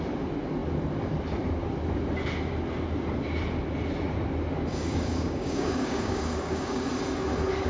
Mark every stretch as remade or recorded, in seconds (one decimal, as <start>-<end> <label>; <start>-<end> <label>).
0.0-4.7 recorded; 4.7-6.9 remade; 6.9-7.7 recorded